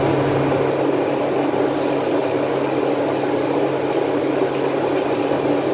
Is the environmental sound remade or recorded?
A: recorded